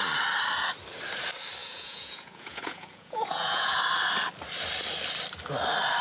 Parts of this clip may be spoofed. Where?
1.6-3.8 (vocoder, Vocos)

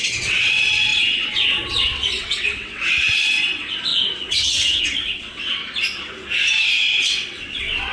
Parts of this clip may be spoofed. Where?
0.0-5.6 (vocoder, WaveNeXt); 7.0-7.9